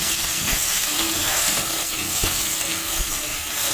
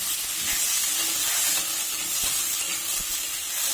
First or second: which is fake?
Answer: first